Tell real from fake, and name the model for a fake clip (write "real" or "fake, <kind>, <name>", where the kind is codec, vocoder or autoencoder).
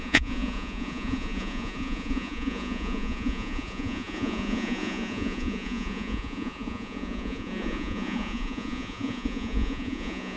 fake, vocoder, Vocos